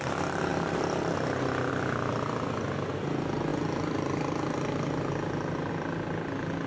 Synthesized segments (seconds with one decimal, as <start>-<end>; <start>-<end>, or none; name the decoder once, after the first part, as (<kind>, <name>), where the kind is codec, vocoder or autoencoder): none